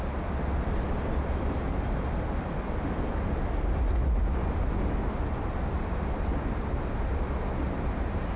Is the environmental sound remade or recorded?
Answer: recorded